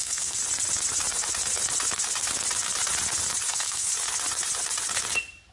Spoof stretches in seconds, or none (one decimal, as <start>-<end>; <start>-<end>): 0.0-0.4; 3.5-3.9